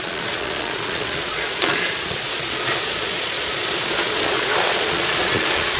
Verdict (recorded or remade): remade